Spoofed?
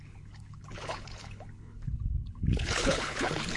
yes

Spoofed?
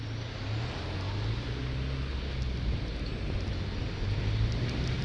no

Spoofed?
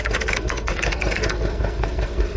yes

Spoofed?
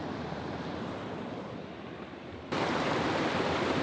no